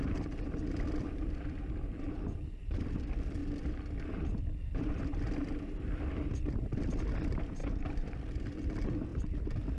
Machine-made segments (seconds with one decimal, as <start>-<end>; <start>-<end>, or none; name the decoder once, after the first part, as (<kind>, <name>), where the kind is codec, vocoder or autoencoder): 0.0-3.4 (vocoder, BigVGAN v2); 4.4-9.8

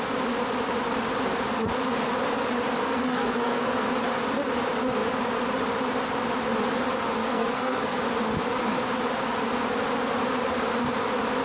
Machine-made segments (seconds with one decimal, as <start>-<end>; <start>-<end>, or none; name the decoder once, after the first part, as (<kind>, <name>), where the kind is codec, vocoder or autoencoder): 2.8-3.9 (codec, SNAC); 7.2-8.0

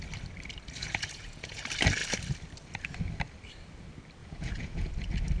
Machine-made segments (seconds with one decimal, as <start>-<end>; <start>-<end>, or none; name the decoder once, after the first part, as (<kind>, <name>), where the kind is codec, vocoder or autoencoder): 0.8-1.6 (vocoder, Vocos); 4.2-4.9

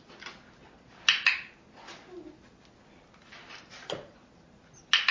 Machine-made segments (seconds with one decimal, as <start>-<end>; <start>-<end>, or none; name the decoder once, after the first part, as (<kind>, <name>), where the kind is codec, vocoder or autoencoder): none

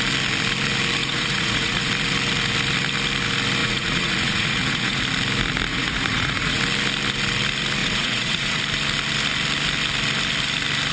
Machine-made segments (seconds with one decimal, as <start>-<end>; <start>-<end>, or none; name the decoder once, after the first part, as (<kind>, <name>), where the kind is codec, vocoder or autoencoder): 1.0-1.9 (vocoder, Vocos); 3.6-5.0; 5.7-6.6; 7.8-8.6

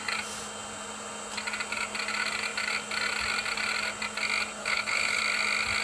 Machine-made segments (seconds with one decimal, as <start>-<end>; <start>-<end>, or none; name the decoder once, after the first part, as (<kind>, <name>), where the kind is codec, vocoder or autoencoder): 4.6-5.2 (codec, HILCodec)